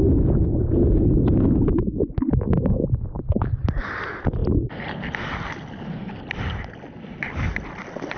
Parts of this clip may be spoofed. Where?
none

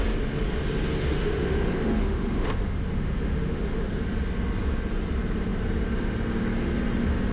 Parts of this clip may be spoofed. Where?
1.0-4.0 (autoencoder, DAC-VAE)

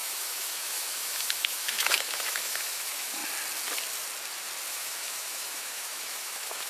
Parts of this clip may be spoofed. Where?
0.0-3.2 (autoencoder, DAC-VAE); 4.7-6.7

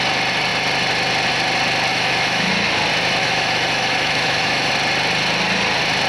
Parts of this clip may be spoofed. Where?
1.9-2.5 (autoencoder, DAC-VAE); 3.2-4.7

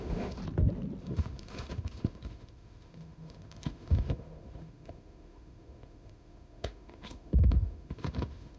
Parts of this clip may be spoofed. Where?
0.0-0.4 (autoencoder, DAC-VAE); 1.0-8.6

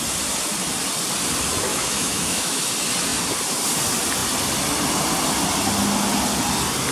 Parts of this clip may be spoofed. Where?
1.7-2.7 (autoencoder, DAC-VAE)

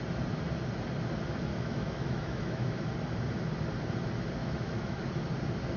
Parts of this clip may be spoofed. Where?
1.5-2.9 (autoencoder, DAC-VAE); 4.4-5.0